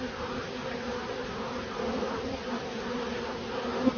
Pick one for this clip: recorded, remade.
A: recorded